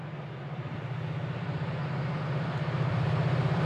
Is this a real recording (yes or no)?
no